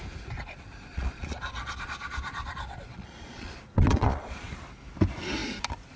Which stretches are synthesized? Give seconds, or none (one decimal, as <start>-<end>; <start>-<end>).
0.9-4.5